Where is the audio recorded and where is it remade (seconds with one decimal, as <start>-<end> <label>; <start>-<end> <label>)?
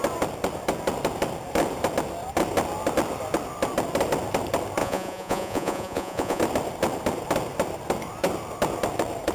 0.0-4.8 recorded; 4.8-6.4 remade; 6.4-9.3 recorded